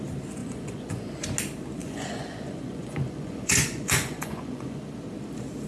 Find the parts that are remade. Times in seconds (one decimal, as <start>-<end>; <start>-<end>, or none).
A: 0.4-1.1; 1.8-4.8